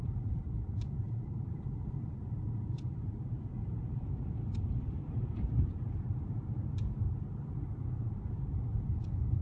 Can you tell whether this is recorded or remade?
remade